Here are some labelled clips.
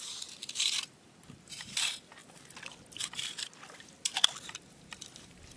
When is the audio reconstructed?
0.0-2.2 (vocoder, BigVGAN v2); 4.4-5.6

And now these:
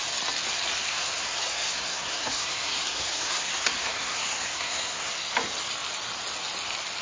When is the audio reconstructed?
0.9-5.1 (codec, SNAC)